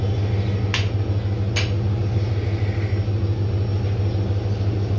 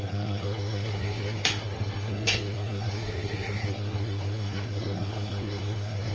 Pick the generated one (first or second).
second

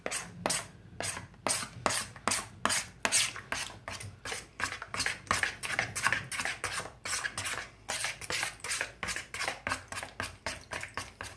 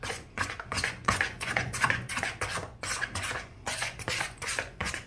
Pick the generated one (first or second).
second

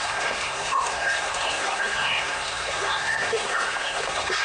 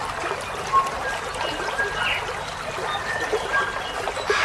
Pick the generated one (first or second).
first